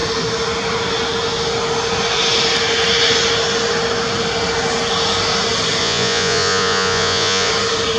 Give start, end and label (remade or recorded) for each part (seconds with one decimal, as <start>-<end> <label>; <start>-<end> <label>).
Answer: 0.0-5.8 recorded; 5.8-7.5 remade; 7.5-8.0 recorded